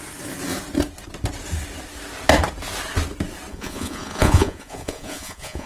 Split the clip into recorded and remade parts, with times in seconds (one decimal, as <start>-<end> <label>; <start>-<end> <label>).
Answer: 0.0-3.5 recorded; 3.5-5.7 remade